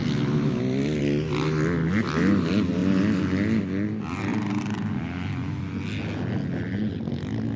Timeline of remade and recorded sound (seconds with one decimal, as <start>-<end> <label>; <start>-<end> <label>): 0.0-7.6 recorded